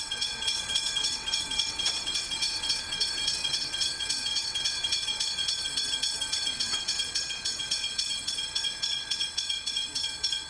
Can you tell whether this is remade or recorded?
remade